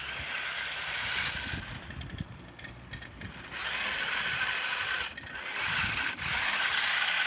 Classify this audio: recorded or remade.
recorded